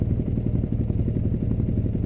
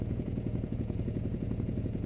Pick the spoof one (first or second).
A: second